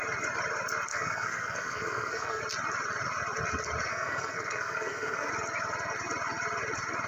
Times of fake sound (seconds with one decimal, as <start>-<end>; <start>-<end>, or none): 0.9-2.4; 3.9-5.3